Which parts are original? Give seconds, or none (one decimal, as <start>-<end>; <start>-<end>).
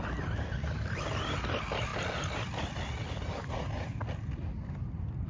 0.0-5.3